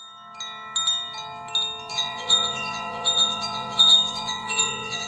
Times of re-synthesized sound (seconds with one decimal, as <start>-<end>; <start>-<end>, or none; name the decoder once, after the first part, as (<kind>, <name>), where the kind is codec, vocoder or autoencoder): 1.9-5.1 (vocoder, Vocos)